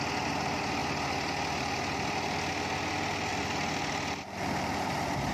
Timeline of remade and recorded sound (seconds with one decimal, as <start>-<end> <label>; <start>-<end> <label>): 0.0-0.8 recorded; 0.8-2.5 remade; 2.5-3.3 recorded; 3.3-5.3 remade